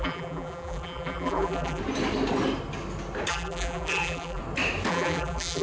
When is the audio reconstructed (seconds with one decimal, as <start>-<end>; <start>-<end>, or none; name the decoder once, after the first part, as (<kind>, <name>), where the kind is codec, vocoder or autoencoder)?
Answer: 0.0-1.8 (vocoder, BigVGAN v2); 3.3-4.4; 4.9-5.6